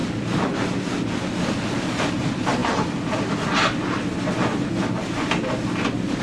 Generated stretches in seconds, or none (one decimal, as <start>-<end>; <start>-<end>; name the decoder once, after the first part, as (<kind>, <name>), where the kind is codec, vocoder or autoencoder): none